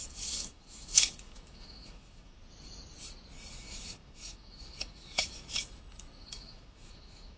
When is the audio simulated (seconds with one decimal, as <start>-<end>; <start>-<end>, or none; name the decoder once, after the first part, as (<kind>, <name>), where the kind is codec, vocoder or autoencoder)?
0.0-2.4 (autoencoder, DAC-VAE); 3.5-7.4

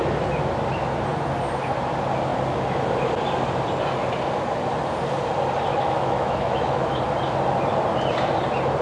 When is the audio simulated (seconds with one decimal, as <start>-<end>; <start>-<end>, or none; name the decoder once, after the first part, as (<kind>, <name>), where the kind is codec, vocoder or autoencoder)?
5.7-7.0 (autoencoder, DAC-VAE)

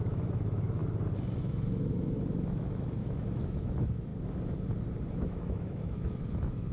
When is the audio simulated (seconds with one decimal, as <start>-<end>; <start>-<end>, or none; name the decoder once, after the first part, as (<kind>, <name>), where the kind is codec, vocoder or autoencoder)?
0.0-0.8 (autoencoder, DAC-VAE); 1.4-4.1; 5.1-6.7

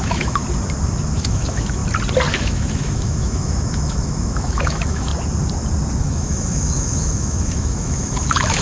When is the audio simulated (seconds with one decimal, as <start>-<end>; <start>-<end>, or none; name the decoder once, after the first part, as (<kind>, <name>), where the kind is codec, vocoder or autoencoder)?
0.0-0.4 (autoencoder, DAC-VAE); 1.1-1.8; 2.3-5.1; 6.0-8.6

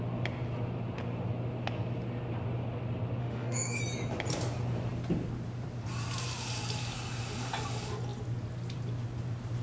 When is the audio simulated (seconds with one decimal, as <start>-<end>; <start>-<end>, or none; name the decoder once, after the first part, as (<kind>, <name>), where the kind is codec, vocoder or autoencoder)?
3.2-3.8 (autoencoder, DAC-VAE)

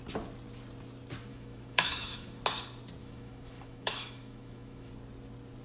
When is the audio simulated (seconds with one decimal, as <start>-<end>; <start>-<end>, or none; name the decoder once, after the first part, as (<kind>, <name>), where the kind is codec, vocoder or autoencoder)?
1.3-2.4 (autoencoder, DAC-VAE); 3.0-4.9

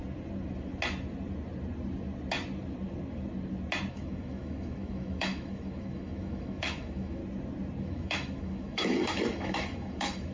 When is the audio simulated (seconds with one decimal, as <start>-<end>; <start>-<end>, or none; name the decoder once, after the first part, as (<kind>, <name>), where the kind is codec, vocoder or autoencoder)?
3.9-7.2 (autoencoder, DAC-VAE); 7.8-10.3

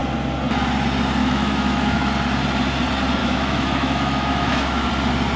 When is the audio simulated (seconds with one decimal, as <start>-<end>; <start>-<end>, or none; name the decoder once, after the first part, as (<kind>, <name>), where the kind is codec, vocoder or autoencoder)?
1.2-2.1 (autoencoder, DAC-VAE); 3.2-4.9